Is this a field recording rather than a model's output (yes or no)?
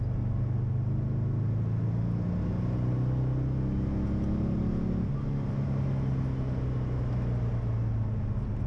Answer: yes